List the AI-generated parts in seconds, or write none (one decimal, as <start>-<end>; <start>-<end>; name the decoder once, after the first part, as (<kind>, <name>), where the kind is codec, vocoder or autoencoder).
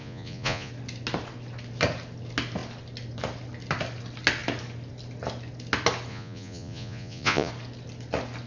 0.0-0.7 (vocoder, Vocos); 6.1-7.5